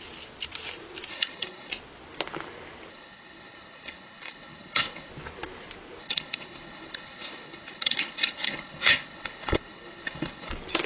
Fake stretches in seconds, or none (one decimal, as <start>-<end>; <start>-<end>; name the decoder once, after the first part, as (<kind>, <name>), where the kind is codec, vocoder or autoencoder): 1.1-1.7 (codec, HILCodec); 2.9-5.1; 6.0-10.5